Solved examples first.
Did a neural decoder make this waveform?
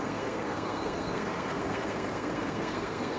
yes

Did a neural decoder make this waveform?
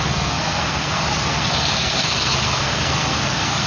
yes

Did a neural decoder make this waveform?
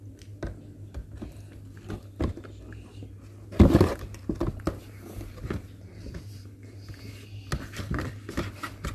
no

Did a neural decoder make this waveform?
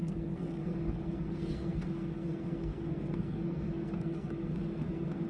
yes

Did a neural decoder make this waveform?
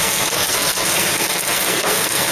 yes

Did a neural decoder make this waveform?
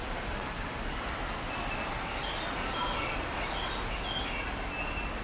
no